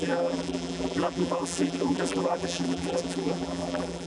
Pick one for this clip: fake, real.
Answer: fake